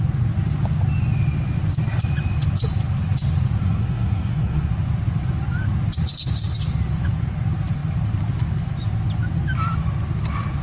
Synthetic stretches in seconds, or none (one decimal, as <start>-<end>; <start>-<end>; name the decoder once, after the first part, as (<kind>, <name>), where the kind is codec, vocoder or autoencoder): 3.6-4.7 (codec, SNAC)